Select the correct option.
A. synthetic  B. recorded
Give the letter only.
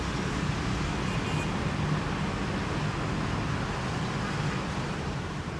B